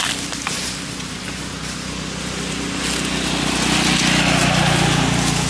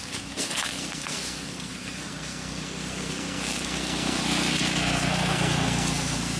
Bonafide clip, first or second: first